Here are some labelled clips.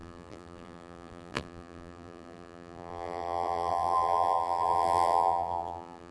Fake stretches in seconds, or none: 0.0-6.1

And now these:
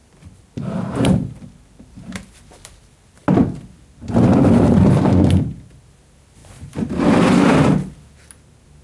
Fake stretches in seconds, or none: 0.0-2.8; 6.4-7.9

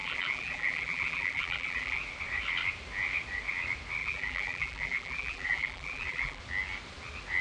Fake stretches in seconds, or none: 0.0-2.0; 4.0-6.4

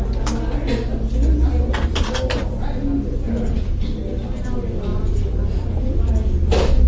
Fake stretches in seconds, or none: 4.9-6.1